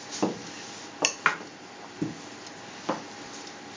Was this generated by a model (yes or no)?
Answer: no